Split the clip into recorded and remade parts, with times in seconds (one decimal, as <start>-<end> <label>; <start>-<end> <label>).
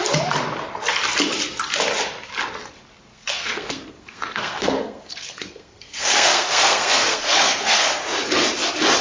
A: 0.0-3.1 recorded; 3.1-7.9 remade; 7.9-9.0 recorded